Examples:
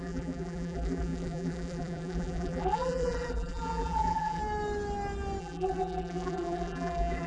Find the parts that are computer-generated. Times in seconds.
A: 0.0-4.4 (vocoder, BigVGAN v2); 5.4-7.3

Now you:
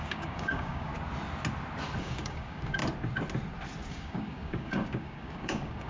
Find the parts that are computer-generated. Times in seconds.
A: 0.0-0.9 (codec, DAC); 2.0-2.8; 3.9-5.9